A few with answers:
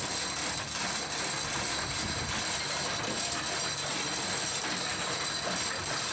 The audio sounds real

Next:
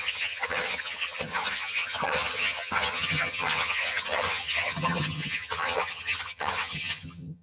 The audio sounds fake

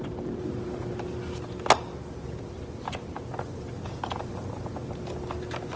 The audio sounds real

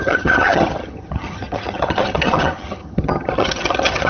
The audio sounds fake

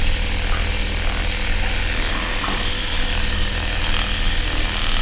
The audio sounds real